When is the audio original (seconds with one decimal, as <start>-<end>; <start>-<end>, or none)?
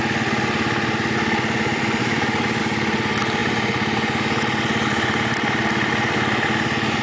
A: 0.0-2.0; 2.6-7.0